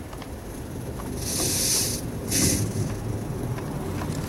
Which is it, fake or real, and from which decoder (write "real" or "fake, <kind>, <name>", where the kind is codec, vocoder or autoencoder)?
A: real